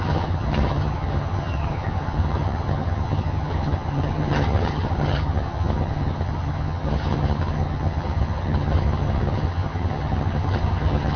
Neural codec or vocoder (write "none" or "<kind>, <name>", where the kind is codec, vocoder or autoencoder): vocoder, HiFi-GAN